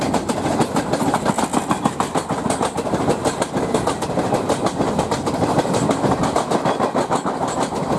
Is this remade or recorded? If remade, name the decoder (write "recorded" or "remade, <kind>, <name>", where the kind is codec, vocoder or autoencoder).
recorded